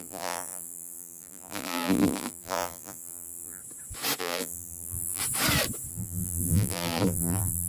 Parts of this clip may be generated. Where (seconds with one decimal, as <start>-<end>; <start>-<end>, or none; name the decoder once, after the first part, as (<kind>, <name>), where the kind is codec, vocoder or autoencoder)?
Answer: 0.0-3.6 (vocoder, BigVGAN v2); 4.2-5.2; 5.9-7.7